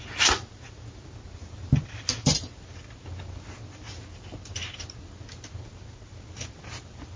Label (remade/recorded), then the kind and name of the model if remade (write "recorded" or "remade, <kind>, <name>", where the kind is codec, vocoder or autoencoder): recorded